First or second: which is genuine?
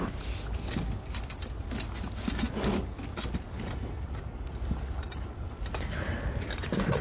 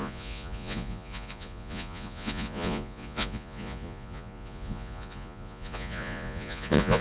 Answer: first